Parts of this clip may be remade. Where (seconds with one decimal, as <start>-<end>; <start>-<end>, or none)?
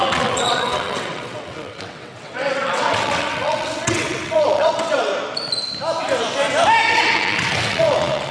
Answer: 0.0-5.1; 6.9-8.3